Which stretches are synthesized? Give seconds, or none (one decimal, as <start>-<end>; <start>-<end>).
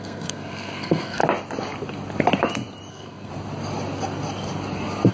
0.0-1.2; 2.9-3.3